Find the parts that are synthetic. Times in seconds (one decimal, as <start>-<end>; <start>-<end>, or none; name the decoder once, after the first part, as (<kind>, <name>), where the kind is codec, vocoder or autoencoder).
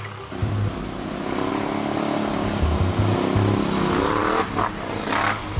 0.4-1.5 (vocoder, BigVGAN v2)